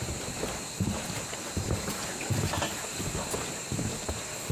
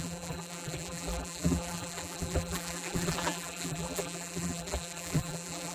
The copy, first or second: second